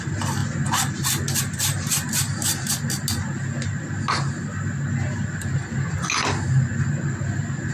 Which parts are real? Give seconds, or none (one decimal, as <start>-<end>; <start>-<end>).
2.1-6.7